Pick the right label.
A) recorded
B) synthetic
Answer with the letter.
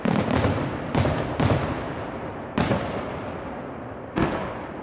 A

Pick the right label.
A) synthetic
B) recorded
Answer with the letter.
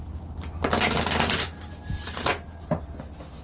B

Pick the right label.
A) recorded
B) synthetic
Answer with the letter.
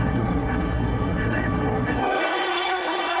B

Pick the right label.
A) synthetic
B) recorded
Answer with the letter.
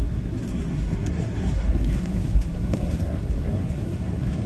A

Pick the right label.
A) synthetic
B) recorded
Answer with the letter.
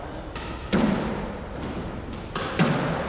B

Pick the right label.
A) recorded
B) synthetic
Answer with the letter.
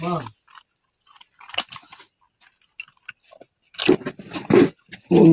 A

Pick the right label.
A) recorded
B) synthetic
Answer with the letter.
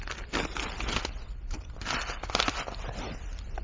A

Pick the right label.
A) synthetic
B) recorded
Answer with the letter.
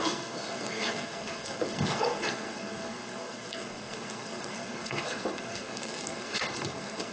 A